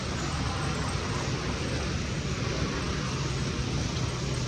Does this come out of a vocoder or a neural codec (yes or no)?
no